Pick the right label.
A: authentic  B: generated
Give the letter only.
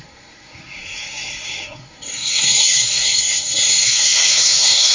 B